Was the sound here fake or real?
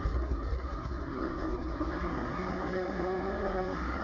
fake